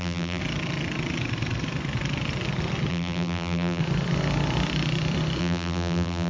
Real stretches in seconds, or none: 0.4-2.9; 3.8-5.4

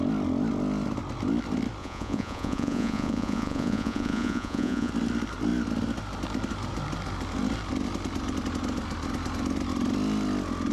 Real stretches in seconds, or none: 0.0-1.8; 4.9-10.7

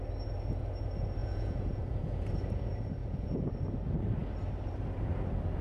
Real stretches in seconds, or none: 0.0-1.2; 2.3-3.0; 3.5-5.6